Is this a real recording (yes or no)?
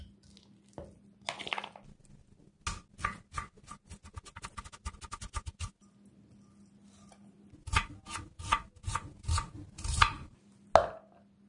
yes